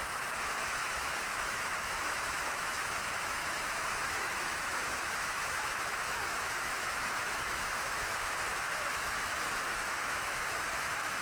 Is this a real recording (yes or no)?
no